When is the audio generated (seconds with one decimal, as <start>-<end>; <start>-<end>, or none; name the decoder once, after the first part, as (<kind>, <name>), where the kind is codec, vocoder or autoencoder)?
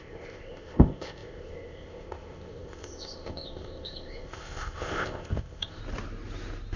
0.0-5.8 (codec, ZipCodec)